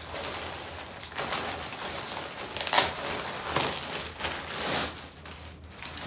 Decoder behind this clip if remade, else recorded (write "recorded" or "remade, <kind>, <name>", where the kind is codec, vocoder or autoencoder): recorded